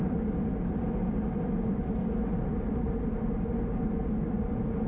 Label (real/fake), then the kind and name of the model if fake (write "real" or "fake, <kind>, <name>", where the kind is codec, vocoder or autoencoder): real